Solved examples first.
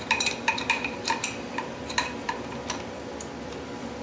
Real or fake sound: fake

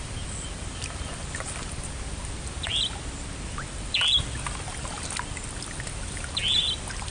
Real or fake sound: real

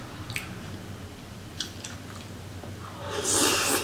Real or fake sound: real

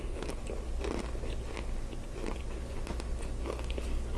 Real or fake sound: real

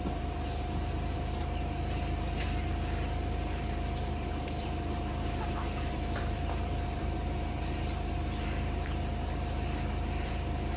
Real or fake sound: fake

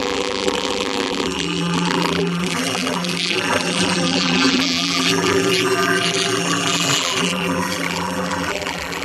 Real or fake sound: fake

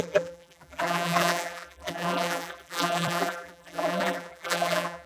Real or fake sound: fake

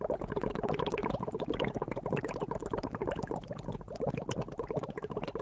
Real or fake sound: real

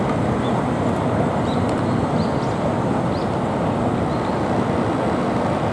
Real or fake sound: real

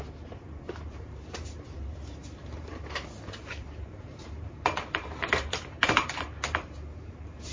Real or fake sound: fake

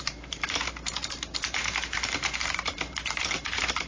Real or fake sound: fake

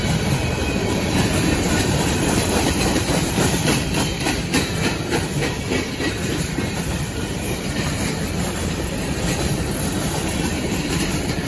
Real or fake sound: fake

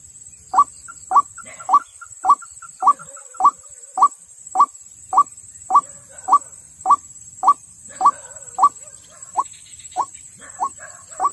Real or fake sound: real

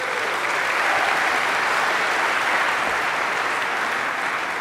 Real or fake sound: real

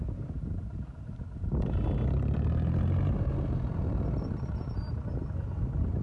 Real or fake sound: real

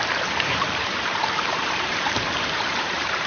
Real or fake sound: fake